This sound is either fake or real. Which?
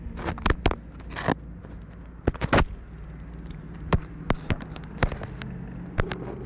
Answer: real